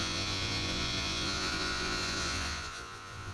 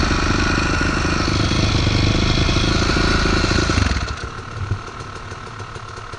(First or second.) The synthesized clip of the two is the first